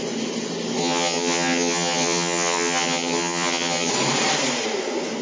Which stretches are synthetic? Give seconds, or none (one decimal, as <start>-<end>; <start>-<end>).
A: 0.8-3.9